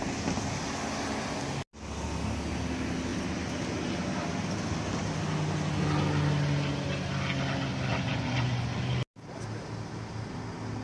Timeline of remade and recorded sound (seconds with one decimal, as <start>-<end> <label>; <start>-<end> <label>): 0.0-7.9 recorded; 7.9-8.8 remade; 8.8-10.8 recorded